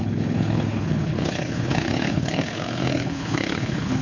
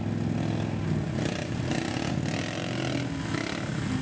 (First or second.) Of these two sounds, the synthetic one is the first